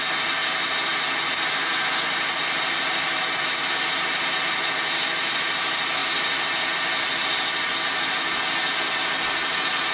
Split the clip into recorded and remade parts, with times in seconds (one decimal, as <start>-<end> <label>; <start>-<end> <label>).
0.0-9.9 recorded